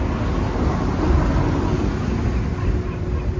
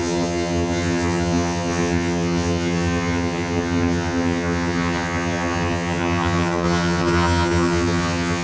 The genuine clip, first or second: first